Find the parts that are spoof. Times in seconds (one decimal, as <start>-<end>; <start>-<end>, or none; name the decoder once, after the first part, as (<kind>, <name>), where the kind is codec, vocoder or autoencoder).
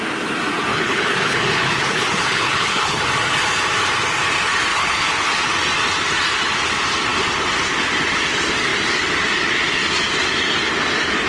0.7-3.0 (codec, HILCodec); 4.7-5.4